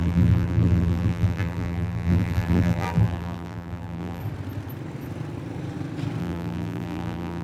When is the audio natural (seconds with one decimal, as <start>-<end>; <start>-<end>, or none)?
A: 4.2-6.2